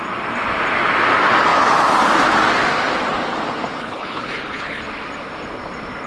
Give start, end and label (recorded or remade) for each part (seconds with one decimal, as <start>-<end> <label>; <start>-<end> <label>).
0.0-3.8 recorded; 3.8-4.8 remade; 4.8-6.1 recorded